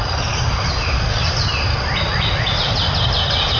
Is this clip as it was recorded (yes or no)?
yes